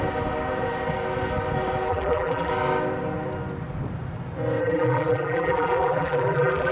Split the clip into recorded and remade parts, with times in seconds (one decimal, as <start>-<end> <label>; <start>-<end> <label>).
0.0-1.9 recorded; 1.9-2.5 remade; 2.5-4.6 recorded; 4.6-6.7 remade